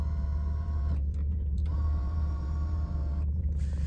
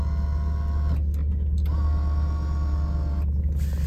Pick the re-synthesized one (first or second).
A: first